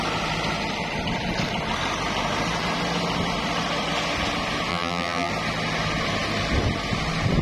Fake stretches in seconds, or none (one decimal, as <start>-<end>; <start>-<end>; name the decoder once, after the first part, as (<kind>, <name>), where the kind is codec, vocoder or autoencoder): 4.7-5.3 (vocoder, BigVGAN v2)